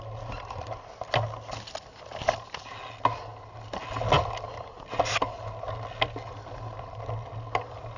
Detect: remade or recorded recorded